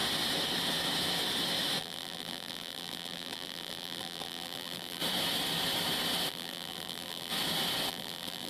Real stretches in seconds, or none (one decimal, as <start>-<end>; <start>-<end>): 0.0-1.8; 5.0-6.3; 7.3-7.9

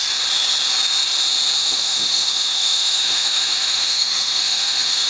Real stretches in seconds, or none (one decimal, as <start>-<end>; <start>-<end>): 0.0-1.6

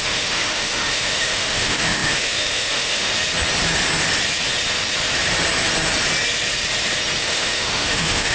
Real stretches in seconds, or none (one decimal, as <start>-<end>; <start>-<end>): 3.1-7.2

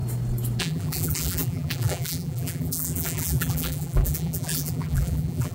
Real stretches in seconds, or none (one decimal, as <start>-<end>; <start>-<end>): 0.0-0.6

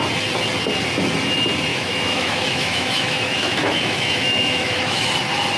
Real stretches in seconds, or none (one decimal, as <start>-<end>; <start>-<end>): 0.0-1.7; 5.1-5.6

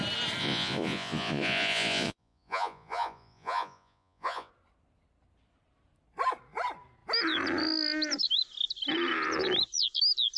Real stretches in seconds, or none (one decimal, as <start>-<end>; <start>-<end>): 0.0-0.4; 4.5-10.4